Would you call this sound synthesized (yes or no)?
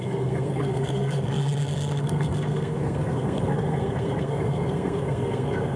yes